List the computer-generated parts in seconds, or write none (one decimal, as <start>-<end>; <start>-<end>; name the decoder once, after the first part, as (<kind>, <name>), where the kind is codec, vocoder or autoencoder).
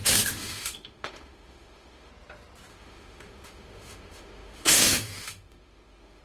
0.0-2.1 (autoencoder, DAC-VAE); 2.7-6.2